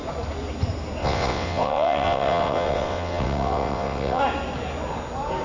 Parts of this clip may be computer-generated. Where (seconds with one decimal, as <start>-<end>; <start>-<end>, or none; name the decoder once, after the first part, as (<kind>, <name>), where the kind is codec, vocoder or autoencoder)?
1.0-4.2 (vocoder, WaveNeXt)